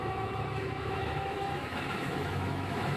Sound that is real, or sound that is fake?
fake